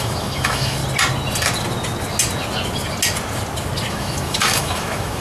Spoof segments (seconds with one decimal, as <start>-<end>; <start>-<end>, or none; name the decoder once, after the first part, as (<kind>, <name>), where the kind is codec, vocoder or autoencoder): 0.0-0.8 (autoencoder, DAC-VAE); 3.9-5.2